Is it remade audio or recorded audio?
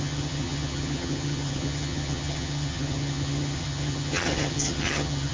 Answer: remade